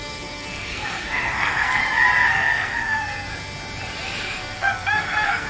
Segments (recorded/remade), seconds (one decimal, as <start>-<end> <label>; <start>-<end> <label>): 0.0-1.8 remade; 1.8-2.3 recorded; 2.3-3.3 remade; 3.3-4.2 recorded; 4.2-5.5 remade